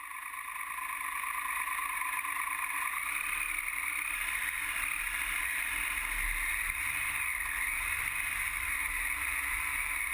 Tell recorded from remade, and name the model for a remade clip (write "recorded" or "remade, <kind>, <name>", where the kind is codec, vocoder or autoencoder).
recorded